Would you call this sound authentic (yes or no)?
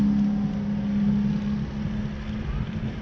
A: yes